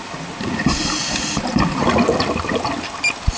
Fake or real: real